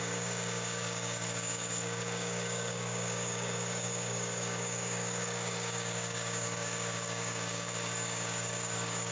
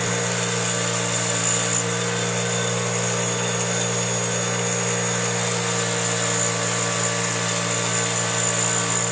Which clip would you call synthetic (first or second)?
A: first